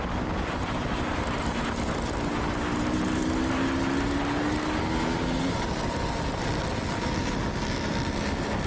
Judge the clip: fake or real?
real